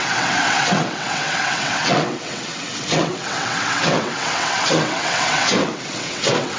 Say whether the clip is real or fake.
fake